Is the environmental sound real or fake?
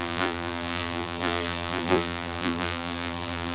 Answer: fake